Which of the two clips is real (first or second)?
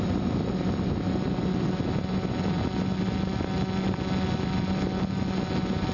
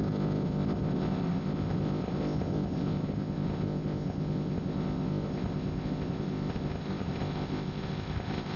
first